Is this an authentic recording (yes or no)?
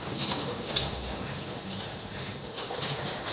no